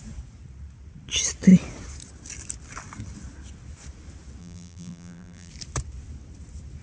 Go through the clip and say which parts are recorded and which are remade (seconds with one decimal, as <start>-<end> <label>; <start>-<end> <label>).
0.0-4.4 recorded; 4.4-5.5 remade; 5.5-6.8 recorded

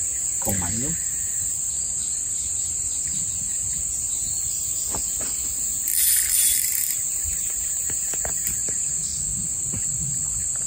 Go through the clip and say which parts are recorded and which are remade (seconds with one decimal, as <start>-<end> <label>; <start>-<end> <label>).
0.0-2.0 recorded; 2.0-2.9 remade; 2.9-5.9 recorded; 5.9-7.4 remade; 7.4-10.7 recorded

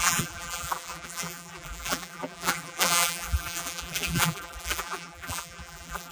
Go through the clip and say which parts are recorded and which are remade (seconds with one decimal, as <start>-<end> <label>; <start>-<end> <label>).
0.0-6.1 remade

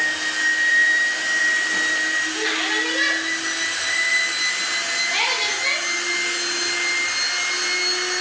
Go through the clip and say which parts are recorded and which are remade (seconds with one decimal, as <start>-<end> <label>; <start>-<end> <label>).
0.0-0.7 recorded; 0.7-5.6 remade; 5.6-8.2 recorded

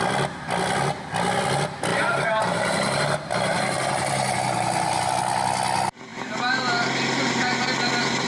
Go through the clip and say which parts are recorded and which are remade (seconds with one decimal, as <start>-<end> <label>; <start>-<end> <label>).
0.0-1.9 recorded; 1.9-5.1 remade; 5.1-8.3 recorded

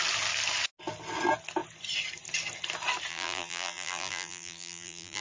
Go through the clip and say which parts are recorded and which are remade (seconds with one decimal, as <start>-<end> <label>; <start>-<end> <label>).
0.0-3.1 recorded; 3.1-5.2 remade

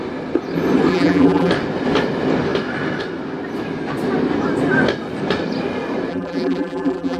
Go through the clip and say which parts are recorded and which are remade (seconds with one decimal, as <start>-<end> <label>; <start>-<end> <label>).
0.0-0.9 recorded; 0.9-1.5 remade; 1.5-6.1 recorded; 6.1-7.2 remade